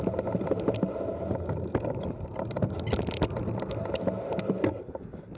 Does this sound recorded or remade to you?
recorded